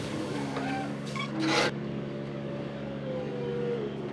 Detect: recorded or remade remade